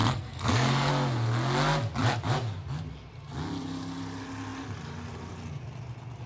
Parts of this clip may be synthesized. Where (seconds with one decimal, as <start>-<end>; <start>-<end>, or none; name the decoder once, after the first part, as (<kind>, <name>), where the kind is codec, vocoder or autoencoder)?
0.0-0.9 (codec, SNAC)